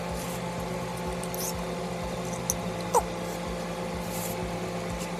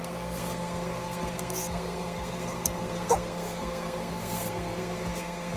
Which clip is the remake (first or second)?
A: second